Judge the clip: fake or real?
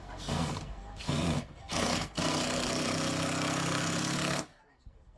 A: fake